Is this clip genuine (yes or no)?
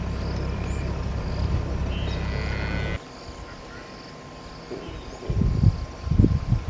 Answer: yes